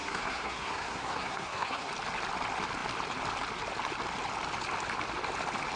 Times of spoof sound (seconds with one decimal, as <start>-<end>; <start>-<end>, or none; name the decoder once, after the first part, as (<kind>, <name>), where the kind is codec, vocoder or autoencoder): 0.0-1.9 (codec, SNAC)